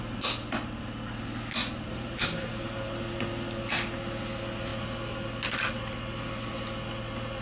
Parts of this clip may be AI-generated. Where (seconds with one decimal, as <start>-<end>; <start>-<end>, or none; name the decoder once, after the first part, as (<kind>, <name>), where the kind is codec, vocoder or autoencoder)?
1.6-2.7 (vocoder, BigVGAN v2)